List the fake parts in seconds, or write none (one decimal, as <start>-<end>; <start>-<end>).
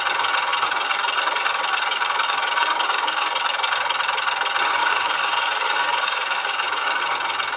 0.5-3.7; 4.8-7.0